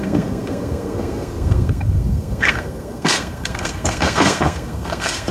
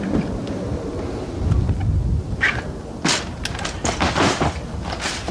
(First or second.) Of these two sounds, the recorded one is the second